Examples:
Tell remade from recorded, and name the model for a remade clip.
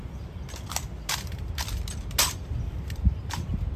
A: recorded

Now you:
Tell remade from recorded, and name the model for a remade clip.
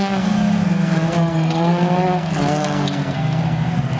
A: remade, codec, SNAC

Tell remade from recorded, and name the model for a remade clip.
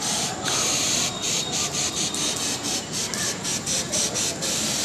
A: recorded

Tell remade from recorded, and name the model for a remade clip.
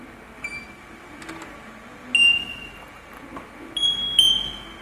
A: recorded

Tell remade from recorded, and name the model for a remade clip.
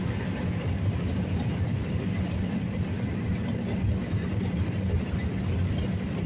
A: recorded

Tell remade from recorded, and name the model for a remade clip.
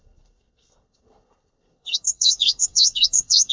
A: remade, codec, SNAC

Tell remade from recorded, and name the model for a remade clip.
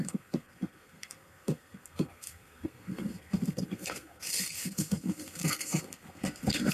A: remade, codec, SNAC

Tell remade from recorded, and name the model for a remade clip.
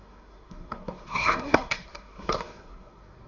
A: remade, codec, SNAC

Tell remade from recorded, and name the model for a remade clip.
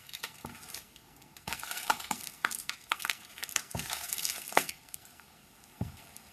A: remade, codec, SNAC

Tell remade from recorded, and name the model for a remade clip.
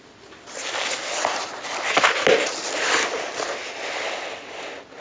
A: recorded